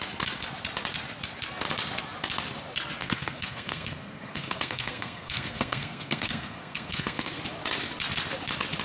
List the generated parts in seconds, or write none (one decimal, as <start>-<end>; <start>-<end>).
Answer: 3.0-7.4

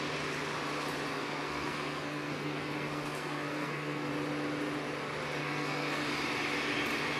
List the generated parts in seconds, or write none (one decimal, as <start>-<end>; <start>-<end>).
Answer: 1.1-4.1; 5.4-6.0

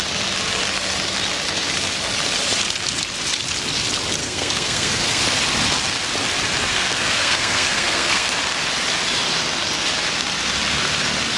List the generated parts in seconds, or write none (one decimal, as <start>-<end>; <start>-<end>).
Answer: 4.2-5.2; 6.7-8.3

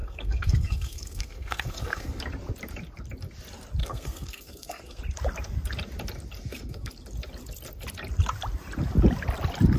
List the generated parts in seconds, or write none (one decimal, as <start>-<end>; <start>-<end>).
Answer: 0.0-2.2; 3.8-5.0; 6.4-6.9

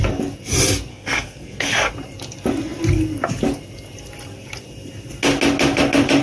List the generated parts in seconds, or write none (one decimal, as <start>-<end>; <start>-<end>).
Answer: 0.9-1.9

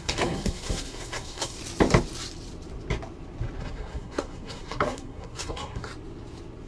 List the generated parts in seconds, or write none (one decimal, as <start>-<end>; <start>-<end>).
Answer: 0.0-1.6; 3.6-5.9

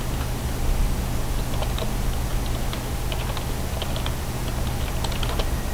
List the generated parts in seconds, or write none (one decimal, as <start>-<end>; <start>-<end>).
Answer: none